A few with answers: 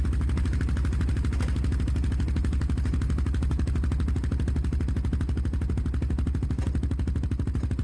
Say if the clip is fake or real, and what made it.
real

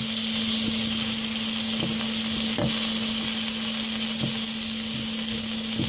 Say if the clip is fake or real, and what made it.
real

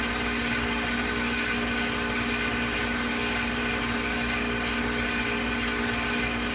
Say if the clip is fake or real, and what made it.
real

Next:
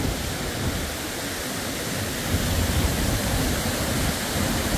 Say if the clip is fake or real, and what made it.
real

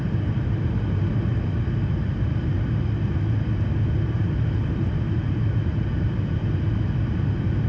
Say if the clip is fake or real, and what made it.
real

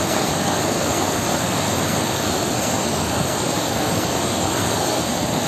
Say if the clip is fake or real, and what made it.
fake, codec, SNAC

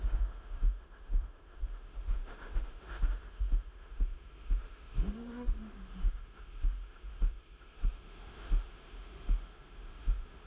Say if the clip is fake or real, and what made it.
fake, autoencoder, DAC-VAE